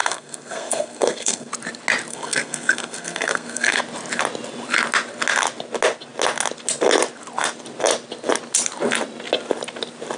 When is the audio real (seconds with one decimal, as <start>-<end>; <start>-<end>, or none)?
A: 1.5-2.1; 3.8-10.2